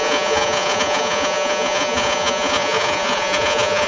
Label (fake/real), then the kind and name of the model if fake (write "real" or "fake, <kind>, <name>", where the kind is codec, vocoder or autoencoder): fake, vocoder, Vocos